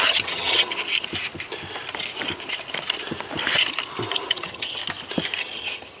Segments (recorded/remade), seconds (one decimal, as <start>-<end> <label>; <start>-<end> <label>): 0.0-0.7 remade; 0.7-4.3 recorded; 4.3-4.8 remade; 4.8-5.4 recorded; 5.4-6.0 remade